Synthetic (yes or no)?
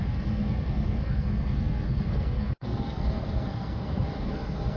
yes